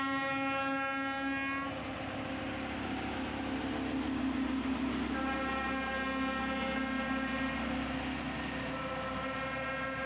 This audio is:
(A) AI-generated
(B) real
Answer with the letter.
B